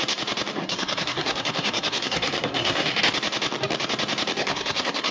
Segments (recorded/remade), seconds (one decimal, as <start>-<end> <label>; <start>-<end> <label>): 0.0-0.6 recorded; 0.6-3.0 remade; 3.0-4.4 recorded; 4.4-5.1 remade